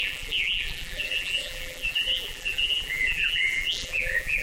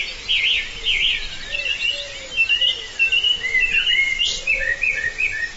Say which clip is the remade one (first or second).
first